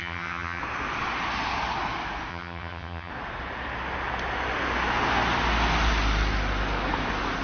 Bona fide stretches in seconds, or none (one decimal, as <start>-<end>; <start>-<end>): 0.6-2.3; 3.1-7.4